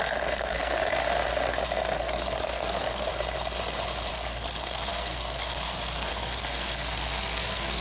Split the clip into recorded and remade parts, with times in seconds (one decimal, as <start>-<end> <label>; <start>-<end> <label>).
0.0-1.0 remade; 1.0-2.0 recorded; 2.0-3.1 remade; 3.1-4.1 recorded; 4.1-7.8 remade